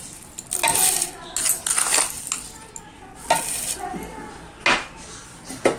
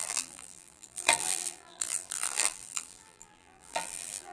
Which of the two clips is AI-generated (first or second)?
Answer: second